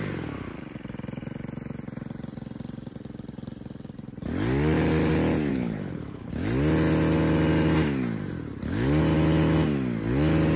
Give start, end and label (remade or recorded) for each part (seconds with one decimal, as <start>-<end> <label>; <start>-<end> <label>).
0.0-5.5 recorded; 5.5-6.3 remade; 6.3-10.6 recorded